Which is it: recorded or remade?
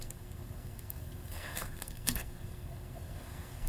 remade